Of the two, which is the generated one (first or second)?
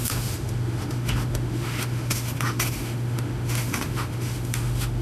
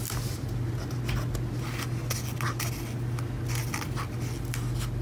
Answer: first